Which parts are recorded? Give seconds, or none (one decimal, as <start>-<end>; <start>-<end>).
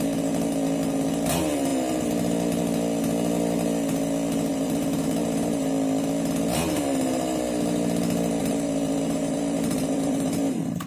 0.0-4.5; 5.7-8.4